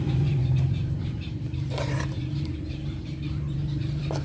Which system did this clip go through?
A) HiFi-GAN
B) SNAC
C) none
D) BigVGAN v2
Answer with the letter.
D